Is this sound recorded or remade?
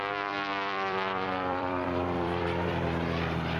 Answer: remade